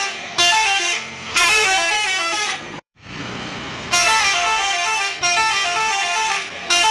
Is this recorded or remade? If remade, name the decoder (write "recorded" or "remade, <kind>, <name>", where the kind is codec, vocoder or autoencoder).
remade, codec, SNAC